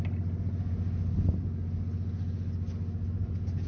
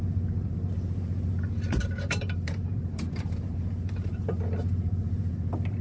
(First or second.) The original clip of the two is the first